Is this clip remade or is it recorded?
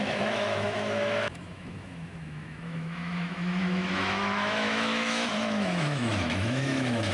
remade